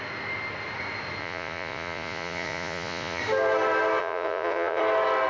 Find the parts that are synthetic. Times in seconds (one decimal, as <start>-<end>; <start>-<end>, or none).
1.2-3.2; 4.0-4.8